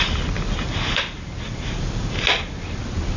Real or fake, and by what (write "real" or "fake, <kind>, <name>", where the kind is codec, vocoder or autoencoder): real